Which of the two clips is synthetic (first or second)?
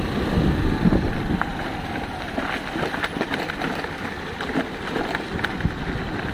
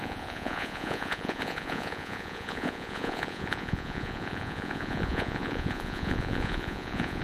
second